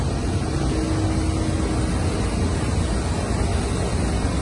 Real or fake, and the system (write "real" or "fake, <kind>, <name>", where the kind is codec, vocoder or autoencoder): real